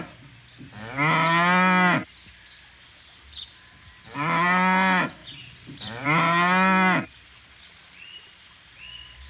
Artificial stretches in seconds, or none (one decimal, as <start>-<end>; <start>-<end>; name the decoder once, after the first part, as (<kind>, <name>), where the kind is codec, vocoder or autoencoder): 5.2-6.2 (vocoder, BigVGAN v2)